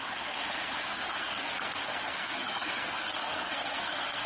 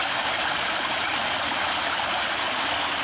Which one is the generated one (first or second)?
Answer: first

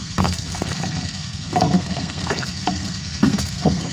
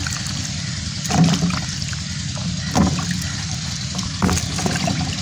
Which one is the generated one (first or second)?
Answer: first